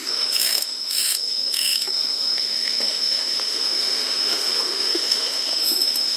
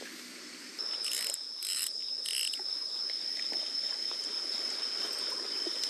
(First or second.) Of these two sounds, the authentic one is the second